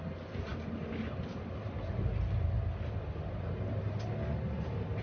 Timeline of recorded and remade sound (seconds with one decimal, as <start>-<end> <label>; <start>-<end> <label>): 0.0-5.0 recorded